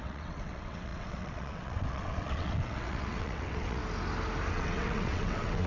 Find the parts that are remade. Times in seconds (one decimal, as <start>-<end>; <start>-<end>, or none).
0.0-3.8; 4.5-5.7